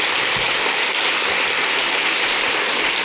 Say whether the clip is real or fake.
real